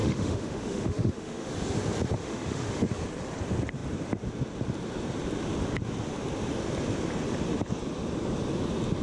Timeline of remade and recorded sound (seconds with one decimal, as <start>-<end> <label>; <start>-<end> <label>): 0.0-1.5 remade; 1.5-2.2 recorded; 2.2-2.8 remade; 2.8-9.0 recorded